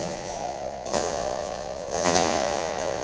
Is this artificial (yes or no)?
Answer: yes